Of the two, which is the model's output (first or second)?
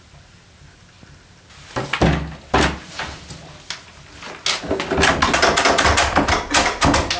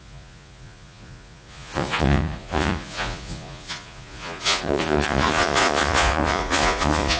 second